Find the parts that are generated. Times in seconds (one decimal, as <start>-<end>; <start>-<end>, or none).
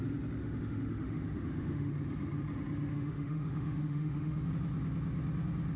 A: 0.4-1.9; 2.9-4.5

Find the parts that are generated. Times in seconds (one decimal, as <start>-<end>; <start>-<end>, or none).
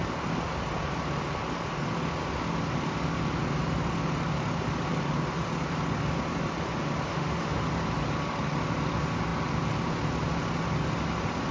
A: 7.1-7.6